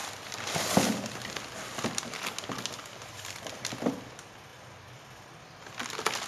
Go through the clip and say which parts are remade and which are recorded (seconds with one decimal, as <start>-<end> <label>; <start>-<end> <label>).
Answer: 0.0-6.3 recorded